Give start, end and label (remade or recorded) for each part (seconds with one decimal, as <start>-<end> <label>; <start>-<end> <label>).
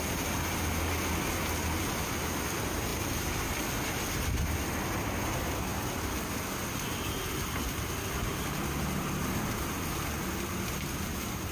0.0-2.9 recorded; 2.9-4.3 remade; 4.3-11.5 recorded